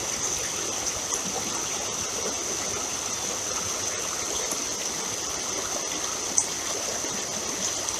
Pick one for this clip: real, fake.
real